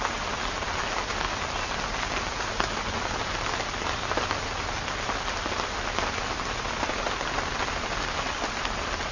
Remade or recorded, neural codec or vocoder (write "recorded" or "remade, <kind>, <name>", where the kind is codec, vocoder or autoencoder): recorded